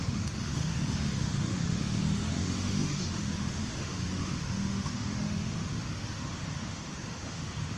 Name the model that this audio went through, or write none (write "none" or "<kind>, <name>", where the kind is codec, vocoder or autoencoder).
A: autoencoder, DAC-VAE